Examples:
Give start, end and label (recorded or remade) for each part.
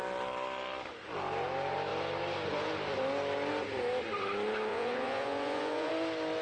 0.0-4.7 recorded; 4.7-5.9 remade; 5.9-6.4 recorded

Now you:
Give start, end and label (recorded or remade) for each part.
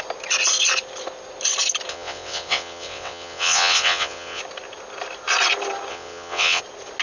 0.0-1.9 recorded; 1.9-4.4 remade; 4.4-5.9 recorded; 5.9-6.6 remade; 6.6-7.0 recorded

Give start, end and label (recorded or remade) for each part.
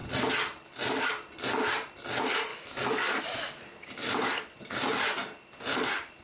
0.0-2.5 recorded; 2.5-3.2 remade; 3.2-6.2 recorded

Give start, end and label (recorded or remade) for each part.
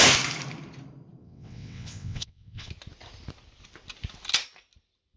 0.0-1.2 recorded; 1.2-2.7 remade; 2.7-5.2 recorded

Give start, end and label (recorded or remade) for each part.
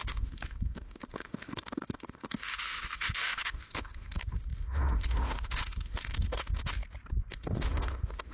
0.0-6.8 remade; 6.8-7.3 recorded; 7.3-8.3 remade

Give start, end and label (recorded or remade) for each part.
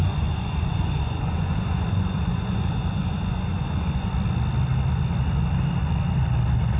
0.0-4.1 remade; 4.1-6.8 recorded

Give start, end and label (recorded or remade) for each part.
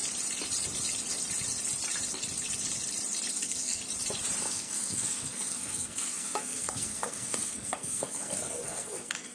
0.0-3.3 recorded; 3.3-3.8 remade; 3.8-4.4 recorded; 4.4-9.3 remade